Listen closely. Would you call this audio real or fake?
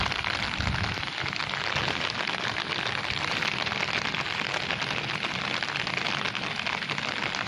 real